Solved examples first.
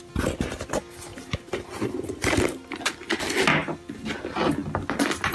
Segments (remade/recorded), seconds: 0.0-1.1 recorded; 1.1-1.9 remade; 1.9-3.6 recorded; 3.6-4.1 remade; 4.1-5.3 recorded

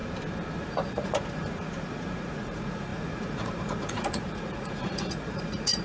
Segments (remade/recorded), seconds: 0.0-0.6 recorded; 0.6-5.8 remade

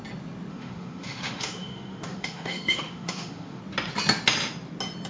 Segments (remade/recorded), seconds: 0.0-0.5 recorded; 0.5-3.6 remade; 3.6-5.1 recorded

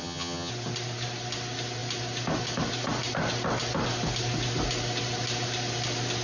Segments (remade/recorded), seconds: 0.0-0.5 remade; 0.5-6.2 recorded

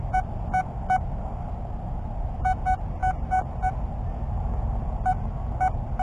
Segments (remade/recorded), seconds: 0.0-6.0 recorded

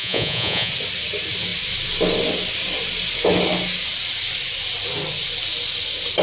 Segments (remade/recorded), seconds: 0.0-0.7 remade; 0.7-6.2 recorded

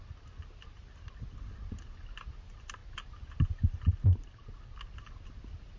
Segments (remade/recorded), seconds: 0.0-5.8 recorded

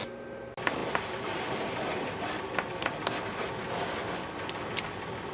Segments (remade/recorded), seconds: 0.0-5.3 recorded